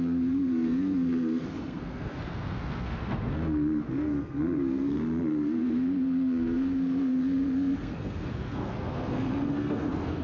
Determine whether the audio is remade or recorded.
remade